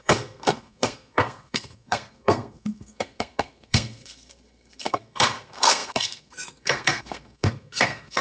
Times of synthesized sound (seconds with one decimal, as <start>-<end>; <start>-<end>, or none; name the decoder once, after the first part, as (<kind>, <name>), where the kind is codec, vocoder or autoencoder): 0.0-8.2 (codec, SNAC)